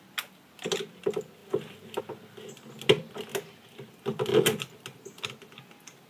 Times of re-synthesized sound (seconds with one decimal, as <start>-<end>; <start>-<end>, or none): none